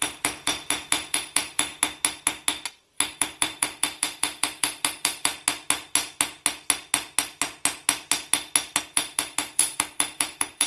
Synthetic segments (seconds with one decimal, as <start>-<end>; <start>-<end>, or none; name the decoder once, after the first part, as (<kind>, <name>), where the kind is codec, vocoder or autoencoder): 0.0-1.7 (vocoder, BigVGAN v2); 2.7-5.3; 8.8-10.7